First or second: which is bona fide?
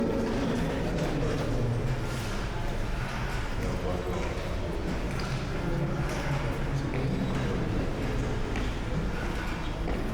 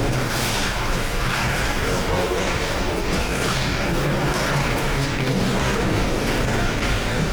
first